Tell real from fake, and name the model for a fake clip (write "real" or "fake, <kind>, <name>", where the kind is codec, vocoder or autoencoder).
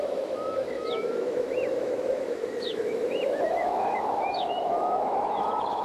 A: fake, autoencoder, DAC-VAE